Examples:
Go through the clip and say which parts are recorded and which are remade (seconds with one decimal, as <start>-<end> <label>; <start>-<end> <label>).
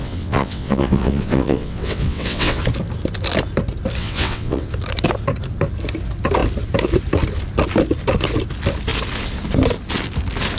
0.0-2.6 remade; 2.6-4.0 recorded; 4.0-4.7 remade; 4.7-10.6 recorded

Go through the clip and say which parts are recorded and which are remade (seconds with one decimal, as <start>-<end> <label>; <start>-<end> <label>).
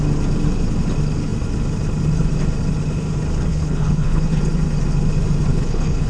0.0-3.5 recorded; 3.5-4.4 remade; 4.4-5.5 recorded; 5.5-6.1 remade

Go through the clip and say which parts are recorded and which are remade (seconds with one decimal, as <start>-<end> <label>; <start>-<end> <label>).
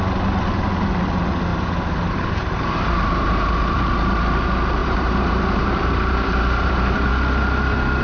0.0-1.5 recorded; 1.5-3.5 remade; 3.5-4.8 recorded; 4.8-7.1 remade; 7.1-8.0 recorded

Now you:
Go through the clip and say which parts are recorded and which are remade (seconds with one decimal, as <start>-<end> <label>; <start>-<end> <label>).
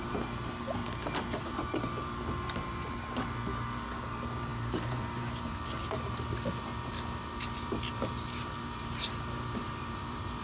0.0-0.8 remade; 0.8-1.4 recorded; 1.4-10.4 remade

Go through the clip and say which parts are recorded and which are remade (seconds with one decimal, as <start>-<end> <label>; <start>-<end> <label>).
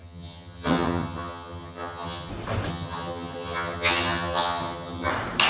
0.0-2.3 remade; 2.3-2.7 recorded; 2.7-5.1 remade; 5.1-5.5 recorded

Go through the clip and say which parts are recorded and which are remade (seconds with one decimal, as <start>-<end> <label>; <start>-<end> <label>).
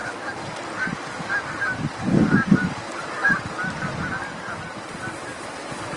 0.0-6.0 recorded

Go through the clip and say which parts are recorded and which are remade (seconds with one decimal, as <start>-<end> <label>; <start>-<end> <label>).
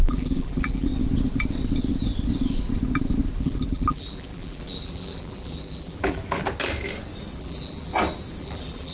0.0-0.9 remade; 0.9-3.4 recorded; 3.4-6.2 remade; 6.2-7.3 recorded; 7.3-7.9 remade; 7.9-8.4 recorded; 8.4-8.9 remade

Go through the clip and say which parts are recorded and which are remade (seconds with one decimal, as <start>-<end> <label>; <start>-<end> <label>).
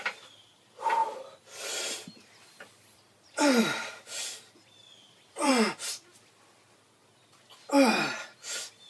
0.0-1.0 recorded; 1.0-5.5 remade; 5.5-8.9 recorded